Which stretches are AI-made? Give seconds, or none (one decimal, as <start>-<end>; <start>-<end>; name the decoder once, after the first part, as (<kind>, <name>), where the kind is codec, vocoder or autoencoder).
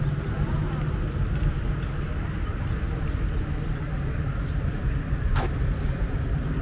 0.0-0.6 (vocoder, BigVGAN v2); 4.6-6.6